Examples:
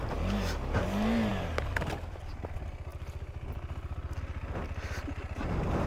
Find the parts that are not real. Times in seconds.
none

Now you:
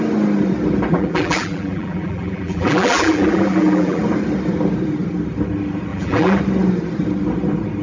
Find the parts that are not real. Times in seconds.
0.9-4.0 (vocoder, BigVGAN v2); 5.9-6.4